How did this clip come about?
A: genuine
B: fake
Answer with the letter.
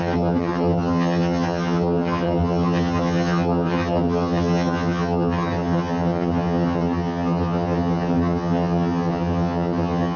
B